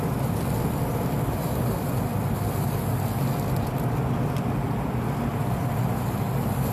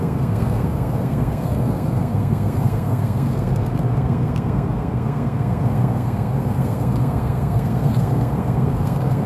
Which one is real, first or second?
first